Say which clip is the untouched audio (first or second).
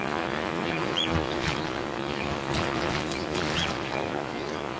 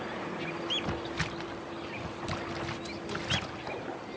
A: second